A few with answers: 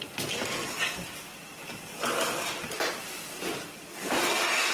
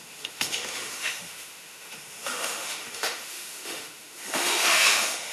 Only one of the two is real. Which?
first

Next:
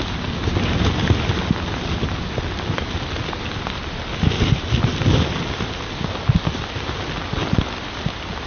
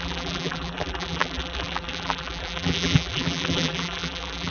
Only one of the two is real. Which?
first